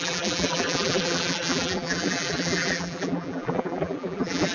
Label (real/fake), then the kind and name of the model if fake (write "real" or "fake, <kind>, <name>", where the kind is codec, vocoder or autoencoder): fake, vocoder, BigVGAN v2